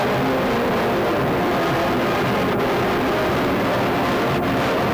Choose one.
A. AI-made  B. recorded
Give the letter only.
B